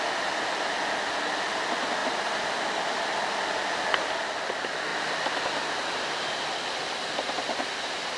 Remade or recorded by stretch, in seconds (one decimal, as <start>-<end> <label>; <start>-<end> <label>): 0.0-2.0 recorded; 2.0-2.7 remade; 2.7-4.9 recorded; 4.9-8.2 remade

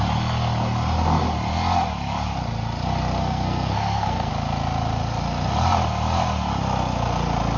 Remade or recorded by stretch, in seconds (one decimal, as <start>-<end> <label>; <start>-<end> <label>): 0.0-3.2 recorded; 3.2-4.3 remade; 4.3-7.6 recorded

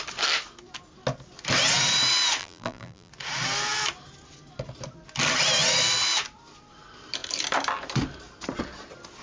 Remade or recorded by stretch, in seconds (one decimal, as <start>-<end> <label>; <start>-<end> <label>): 0.0-2.4 recorded; 2.4-3.1 remade; 3.1-9.2 recorded

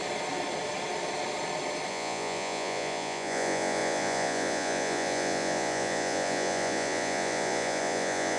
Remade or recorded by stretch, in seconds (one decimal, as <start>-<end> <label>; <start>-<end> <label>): 0.0-1.9 recorded; 1.9-8.4 remade